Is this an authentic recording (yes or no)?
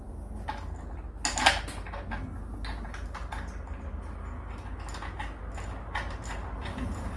yes